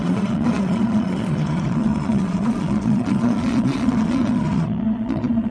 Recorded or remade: remade